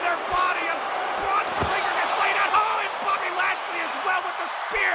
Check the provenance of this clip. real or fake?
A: fake